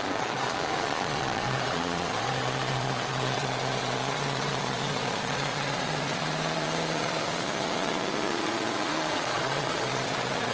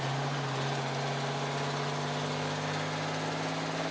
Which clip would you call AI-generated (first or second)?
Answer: first